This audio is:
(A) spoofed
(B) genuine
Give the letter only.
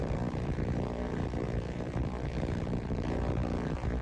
A